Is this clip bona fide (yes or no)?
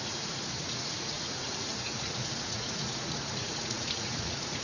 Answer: no